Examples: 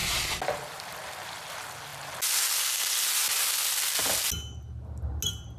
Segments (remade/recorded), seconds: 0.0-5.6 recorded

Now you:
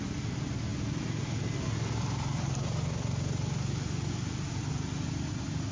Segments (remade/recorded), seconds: 0.0-5.7 recorded

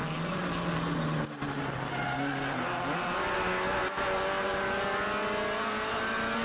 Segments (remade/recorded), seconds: 0.0-6.4 recorded

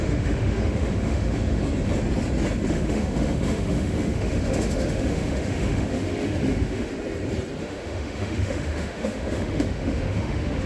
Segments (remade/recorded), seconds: 0.0-1.6 remade; 1.6-2.7 recorded; 2.7-6.9 remade; 6.9-7.6 recorded; 7.6-10.7 remade

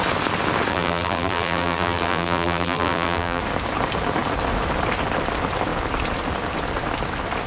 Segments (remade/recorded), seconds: 0.0-0.7 recorded; 0.7-3.4 remade; 3.4-7.5 recorded

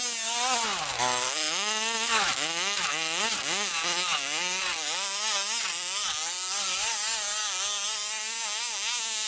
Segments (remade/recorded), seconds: 0.0-0.9 recorded; 0.9-3.2 remade; 3.2-9.3 recorded

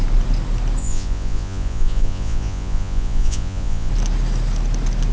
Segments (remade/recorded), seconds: 0.0-0.8 recorded; 0.8-3.9 remade; 3.9-5.1 recorded